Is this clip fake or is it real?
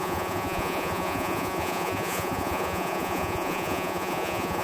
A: fake